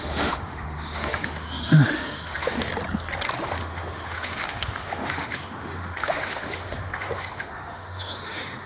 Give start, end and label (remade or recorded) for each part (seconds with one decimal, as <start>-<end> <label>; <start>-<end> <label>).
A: 0.0-2.7 remade; 2.7-3.4 recorded; 3.4-8.7 remade